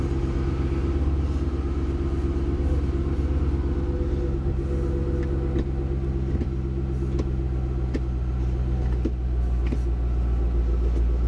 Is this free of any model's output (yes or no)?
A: yes